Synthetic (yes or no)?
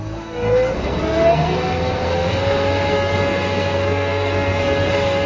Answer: yes